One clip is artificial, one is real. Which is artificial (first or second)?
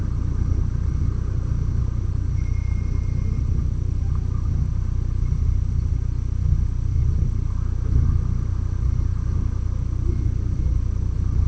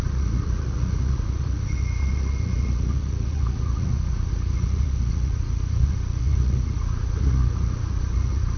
second